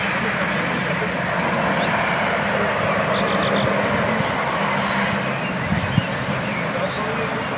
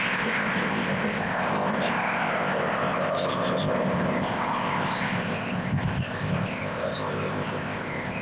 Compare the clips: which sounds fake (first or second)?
second